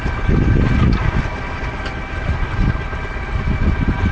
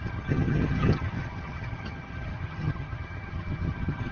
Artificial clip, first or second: second